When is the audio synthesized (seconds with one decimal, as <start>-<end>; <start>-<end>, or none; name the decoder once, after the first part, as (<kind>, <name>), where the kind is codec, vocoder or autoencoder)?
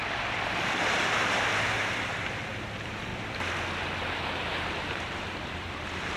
0.0-3.1 (vocoder, BigVGAN v2); 4.7-6.2